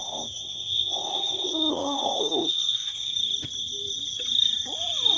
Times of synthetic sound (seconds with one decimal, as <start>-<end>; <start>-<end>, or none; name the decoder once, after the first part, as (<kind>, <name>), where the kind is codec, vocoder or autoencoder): 0.0-3.1 (codec, SNAC)